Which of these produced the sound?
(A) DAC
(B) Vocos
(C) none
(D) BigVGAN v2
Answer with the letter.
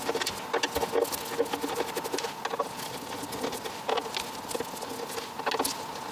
C